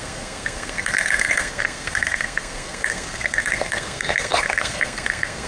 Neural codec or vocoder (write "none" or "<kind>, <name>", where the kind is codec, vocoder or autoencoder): codec, SNAC